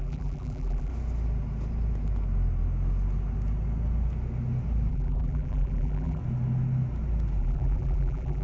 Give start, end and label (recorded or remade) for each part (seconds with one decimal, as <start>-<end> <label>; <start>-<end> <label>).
0.0-0.9 remade; 0.9-4.9 recorded; 4.9-6.2 remade; 6.2-7.4 recorded; 7.4-8.4 remade